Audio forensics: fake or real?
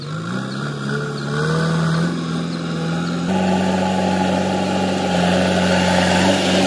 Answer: real